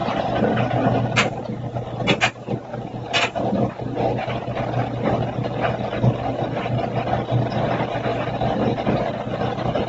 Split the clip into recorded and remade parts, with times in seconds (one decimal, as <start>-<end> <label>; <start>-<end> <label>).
0.0-9.9 recorded